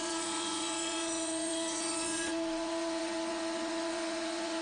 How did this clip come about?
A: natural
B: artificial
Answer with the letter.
B